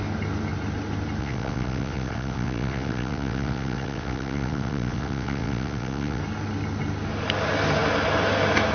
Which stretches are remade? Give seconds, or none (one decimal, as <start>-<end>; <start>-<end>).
1.2-6.2